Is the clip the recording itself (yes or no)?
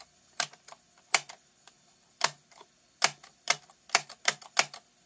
yes